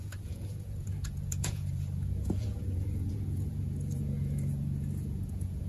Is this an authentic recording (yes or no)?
no